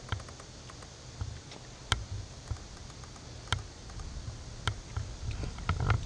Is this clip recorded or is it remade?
recorded